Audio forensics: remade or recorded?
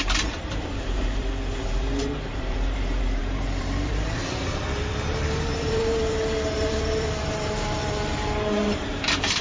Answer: remade